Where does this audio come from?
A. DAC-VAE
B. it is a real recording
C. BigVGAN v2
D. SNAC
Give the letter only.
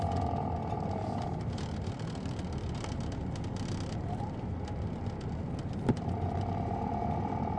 B